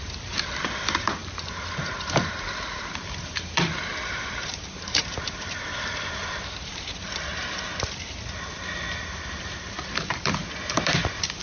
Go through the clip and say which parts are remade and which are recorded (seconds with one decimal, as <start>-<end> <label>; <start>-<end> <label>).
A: 0.0-7.3 remade; 7.3-9.0 recorded; 9.0-11.4 remade